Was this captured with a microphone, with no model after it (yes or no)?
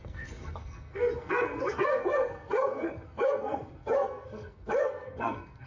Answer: no